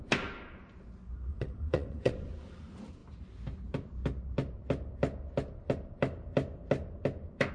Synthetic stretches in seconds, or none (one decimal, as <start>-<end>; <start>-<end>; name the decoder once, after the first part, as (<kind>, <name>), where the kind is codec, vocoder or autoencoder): 1.3-2.1 (vocoder, WaveNeXt)

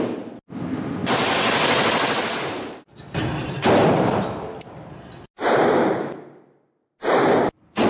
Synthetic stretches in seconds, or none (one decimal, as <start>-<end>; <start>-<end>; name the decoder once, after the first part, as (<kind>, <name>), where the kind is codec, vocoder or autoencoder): 5.4-6.1 (vocoder, BigVGAN v2); 6.8-7.4

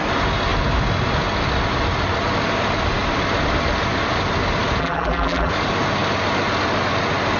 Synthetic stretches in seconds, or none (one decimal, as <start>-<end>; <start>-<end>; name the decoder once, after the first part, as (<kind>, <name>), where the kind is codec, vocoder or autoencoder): 4.8-5.5 (vocoder, BigVGAN v2)

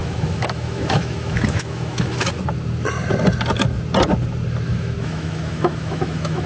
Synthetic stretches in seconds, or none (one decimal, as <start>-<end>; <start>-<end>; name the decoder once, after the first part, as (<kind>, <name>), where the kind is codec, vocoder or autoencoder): 0.0-2.3 (autoencoder, DAC-VAE); 4.7-6.5

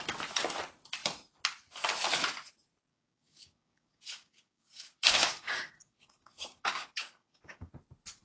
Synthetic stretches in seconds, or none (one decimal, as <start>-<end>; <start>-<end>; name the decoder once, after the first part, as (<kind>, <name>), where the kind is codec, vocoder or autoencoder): 2.9-7.7 (codec, DAC)

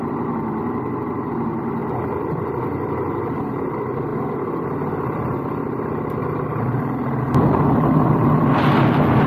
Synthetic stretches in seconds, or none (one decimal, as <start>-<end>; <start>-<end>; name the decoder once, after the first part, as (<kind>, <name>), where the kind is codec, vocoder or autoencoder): 6.2-7.2 (vocoder, BigVGAN v2)

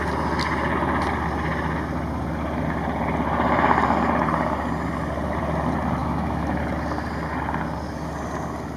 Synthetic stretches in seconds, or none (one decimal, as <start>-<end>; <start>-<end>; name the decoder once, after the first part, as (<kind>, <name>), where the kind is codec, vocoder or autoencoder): 6.0-6.6 (autoencoder, DAC-VAE)

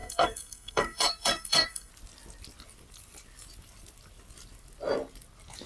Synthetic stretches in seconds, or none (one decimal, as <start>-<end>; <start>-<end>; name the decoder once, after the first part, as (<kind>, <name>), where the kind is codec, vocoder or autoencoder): 0.0-1.9 (codec, SNAC)